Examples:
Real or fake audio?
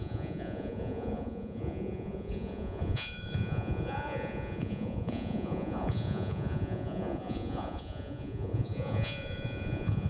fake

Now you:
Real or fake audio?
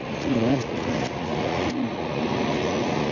fake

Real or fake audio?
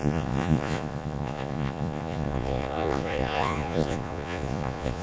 fake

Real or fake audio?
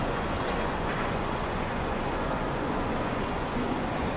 fake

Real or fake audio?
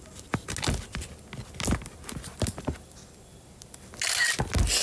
real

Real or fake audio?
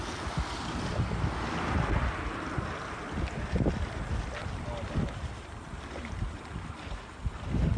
real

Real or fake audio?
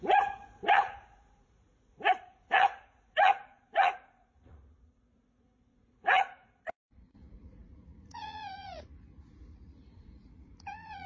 fake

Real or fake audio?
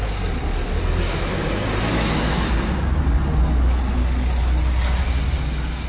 real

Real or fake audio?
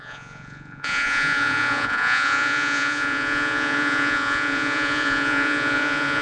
fake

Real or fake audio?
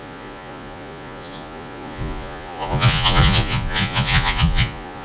fake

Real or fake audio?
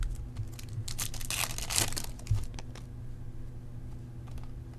real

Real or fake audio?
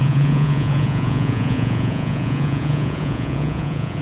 fake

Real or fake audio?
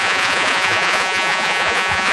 fake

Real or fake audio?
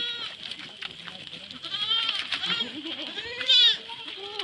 real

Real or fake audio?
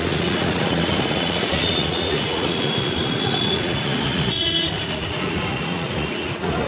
fake